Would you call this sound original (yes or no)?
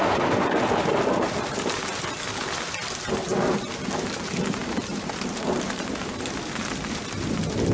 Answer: yes